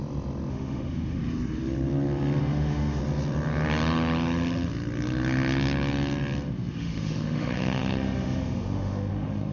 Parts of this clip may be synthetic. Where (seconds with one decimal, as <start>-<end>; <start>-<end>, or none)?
0.5-1.2; 2.4-3.0; 6.7-9.5